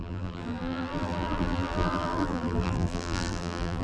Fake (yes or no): yes